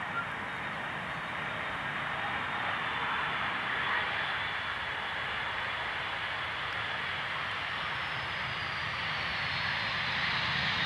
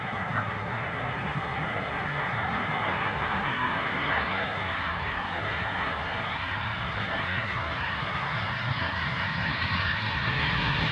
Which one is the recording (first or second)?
first